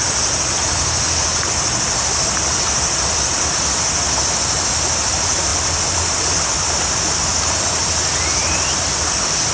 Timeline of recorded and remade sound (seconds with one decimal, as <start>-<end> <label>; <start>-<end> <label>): 0.0-9.5 recorded